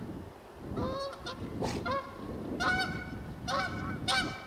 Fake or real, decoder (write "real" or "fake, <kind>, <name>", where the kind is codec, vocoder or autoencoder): fake, vocoder, BigVGAN v2